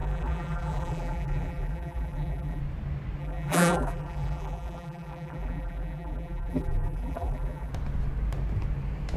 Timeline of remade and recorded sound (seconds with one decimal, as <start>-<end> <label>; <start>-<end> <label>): 0.0-2.6 remade; 2.6-3.2 recorded; 3.2-7.7 remade; 7.7-9.2 recorded